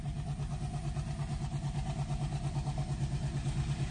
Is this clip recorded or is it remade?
recorded